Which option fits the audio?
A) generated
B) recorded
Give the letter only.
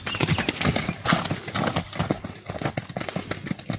B